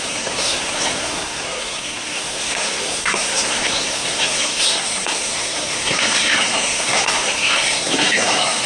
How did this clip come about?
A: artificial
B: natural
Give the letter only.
A